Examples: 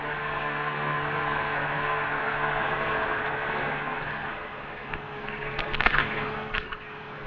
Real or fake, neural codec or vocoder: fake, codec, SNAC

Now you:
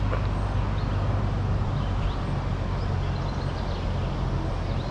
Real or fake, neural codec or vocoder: real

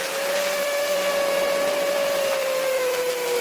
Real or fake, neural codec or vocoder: fake, vocoder, BigVGAN v2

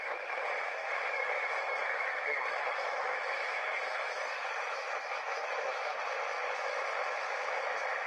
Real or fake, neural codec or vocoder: fake, autoencoder, DAC-VAE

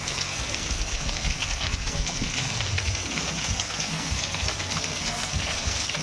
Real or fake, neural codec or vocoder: fake, codec, SNAC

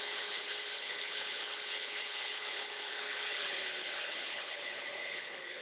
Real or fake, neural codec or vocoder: fake, codec, HILCodec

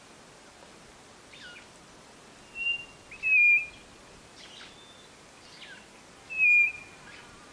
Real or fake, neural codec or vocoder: real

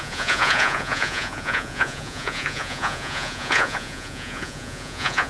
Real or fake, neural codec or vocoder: fake, vocoder, Vocos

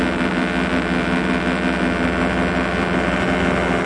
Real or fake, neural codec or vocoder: real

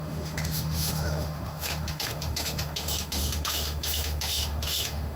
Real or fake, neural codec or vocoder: fake, autoencoder, DAC-VAE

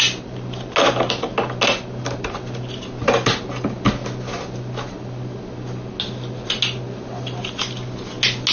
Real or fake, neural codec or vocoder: real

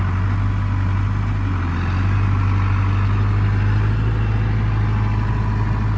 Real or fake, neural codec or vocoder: real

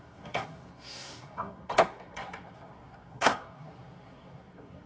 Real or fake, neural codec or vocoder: fake, codec, SNAC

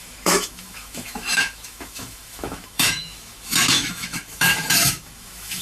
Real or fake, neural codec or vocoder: fake, autoencoder, DAC-VAE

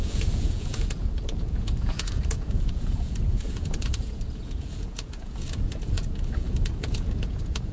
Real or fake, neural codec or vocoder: fake, vocoder, Vocos